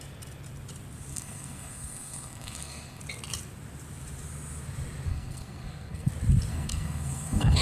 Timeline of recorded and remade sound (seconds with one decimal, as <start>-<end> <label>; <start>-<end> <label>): 0.0-1.1 recorded; 1.1-3.0 remade; 3.0-5.1 recorded; 5.1-6.1 remade; 6.1-6.5 recorded; 6.5-7.6 remade